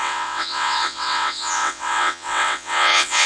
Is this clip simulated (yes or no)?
yes